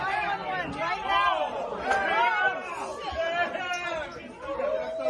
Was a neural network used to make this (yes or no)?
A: no